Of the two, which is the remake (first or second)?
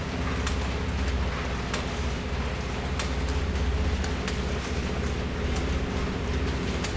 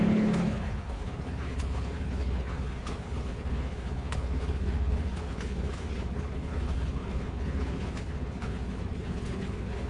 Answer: second